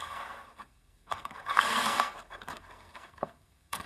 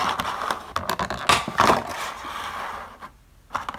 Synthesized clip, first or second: first